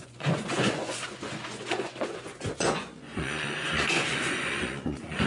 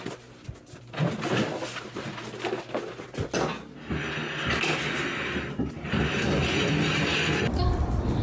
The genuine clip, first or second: second